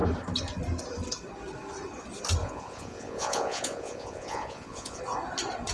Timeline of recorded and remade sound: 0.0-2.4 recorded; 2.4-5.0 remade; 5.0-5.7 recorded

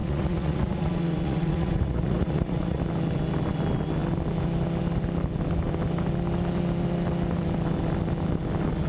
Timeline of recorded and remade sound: 0.0-2.8 remade; 2.8-8.9 recorded